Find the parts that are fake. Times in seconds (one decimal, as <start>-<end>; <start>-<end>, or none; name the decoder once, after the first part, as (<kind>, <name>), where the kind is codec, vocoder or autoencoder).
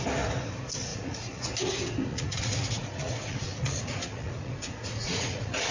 0.9-1.5 (vocoder, Vocos); 2.1-5.7